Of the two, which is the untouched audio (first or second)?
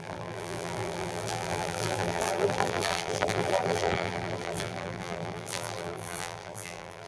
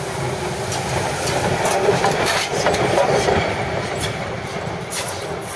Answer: second